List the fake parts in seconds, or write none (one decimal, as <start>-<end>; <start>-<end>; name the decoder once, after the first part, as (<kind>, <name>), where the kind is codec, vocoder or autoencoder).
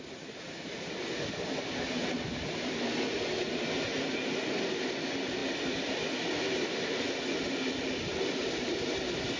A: none